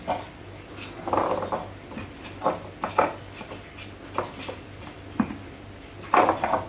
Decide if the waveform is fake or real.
real